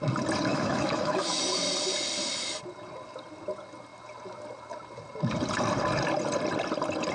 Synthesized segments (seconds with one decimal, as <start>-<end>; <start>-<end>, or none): 0.5-1.4